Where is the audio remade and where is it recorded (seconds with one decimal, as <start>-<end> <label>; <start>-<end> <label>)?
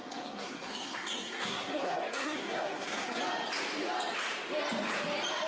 0.0-3.2 remade; 3.2-5.5 recorded